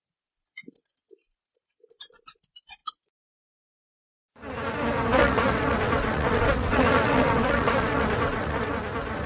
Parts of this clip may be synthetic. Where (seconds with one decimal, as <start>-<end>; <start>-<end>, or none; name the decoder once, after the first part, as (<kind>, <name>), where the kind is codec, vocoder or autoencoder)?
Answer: 5.2-8.7 (vocoder, WaveNeXt)